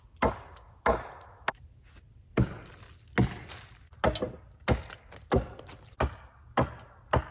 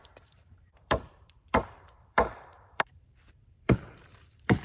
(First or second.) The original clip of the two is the first